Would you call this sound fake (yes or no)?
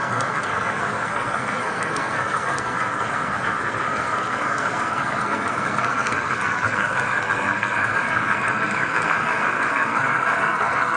yes